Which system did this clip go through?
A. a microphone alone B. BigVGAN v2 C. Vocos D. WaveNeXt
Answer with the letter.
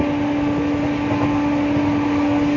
A